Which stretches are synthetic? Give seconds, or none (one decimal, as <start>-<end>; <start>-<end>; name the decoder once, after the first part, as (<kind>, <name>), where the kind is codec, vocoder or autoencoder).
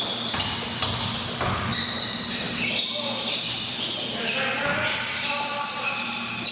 none